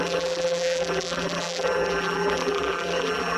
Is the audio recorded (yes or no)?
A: no